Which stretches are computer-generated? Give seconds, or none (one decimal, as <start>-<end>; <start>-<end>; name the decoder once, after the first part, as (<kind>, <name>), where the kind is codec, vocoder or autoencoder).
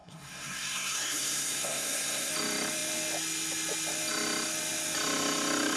0.0-2.3 (codec, SNAC)